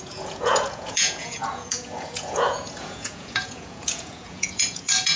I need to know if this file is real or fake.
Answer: fake